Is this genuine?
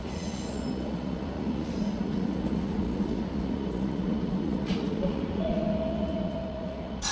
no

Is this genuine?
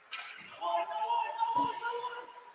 yes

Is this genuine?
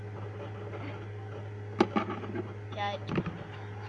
yes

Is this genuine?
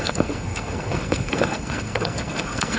no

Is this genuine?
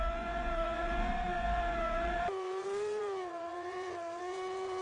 no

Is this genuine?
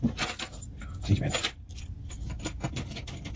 yes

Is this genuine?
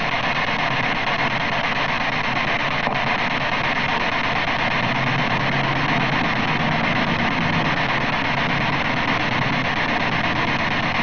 yes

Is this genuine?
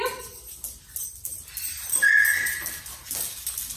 yes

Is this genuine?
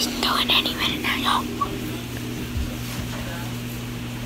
yes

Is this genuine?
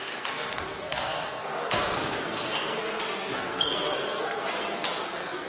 no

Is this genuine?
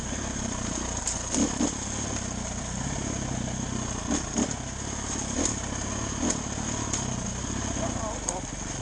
yes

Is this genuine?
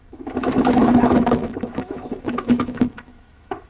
no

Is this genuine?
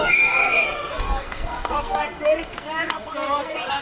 no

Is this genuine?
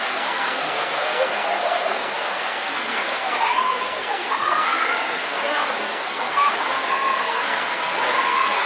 no